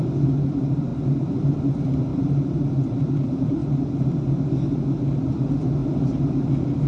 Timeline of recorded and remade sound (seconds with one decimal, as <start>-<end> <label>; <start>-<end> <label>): 0.0-3.6 remade; 3.6-5.3 recorded; 5.3-5.8 remade; 5.8-6.9 recorded